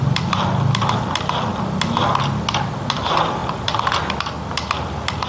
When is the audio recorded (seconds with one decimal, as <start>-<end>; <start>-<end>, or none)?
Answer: 0.0-5.3